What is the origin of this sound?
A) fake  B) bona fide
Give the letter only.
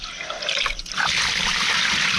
B